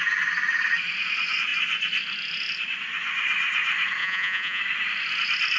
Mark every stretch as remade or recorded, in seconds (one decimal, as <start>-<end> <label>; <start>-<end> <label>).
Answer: 0.0-4.0 recorded; 4.0-4.6 remade; 4.6-5.6 recorded